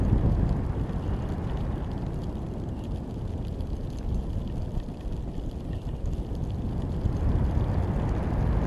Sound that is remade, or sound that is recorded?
recorded